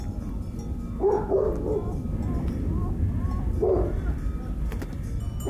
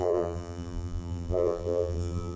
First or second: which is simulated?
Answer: second